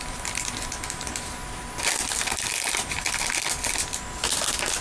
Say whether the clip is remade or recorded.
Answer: recorded